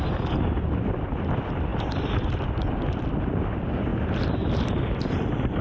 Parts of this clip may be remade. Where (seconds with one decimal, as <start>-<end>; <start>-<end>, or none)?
1.7-2.7; 3.9-4.7